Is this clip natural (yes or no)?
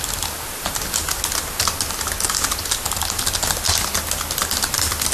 yes